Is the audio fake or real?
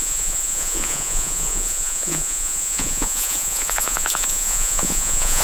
fake